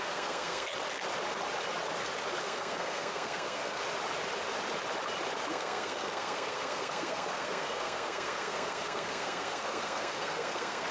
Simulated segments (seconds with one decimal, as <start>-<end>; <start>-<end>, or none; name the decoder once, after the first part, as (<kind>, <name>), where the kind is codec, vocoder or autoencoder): 0.0-0.7 (codec, SNAC); 2.4-3.8; 5.5-10.9